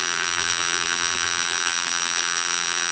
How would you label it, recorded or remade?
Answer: remade